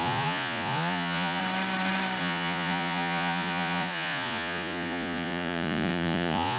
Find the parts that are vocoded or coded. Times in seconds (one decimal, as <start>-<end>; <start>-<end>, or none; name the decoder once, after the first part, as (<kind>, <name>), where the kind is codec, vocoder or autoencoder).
0.0-1.4 (vocoder, Vocos); 2.2-6.6